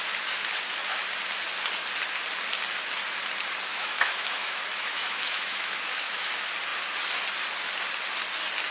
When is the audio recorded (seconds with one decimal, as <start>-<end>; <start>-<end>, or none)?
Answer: 0.0-3.7; 6.3-8.7